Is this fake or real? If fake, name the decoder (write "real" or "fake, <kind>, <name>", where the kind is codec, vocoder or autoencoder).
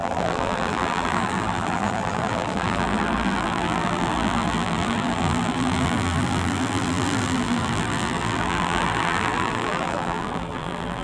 fake, vocoder, BigVGAN v2